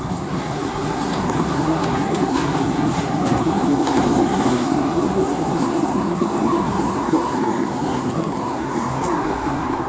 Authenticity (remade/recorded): remade